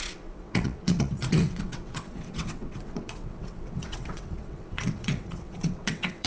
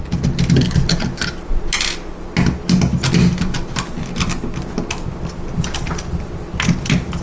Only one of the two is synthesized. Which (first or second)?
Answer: first